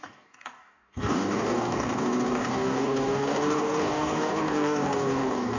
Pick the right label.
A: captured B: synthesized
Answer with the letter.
B